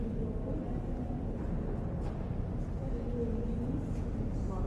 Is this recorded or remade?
recorded